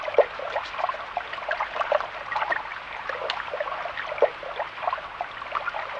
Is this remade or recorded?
recorded